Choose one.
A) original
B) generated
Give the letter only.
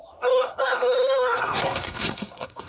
B